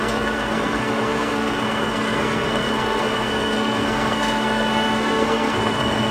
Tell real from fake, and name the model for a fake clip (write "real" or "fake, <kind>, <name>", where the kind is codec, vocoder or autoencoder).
fake, codec, SNAC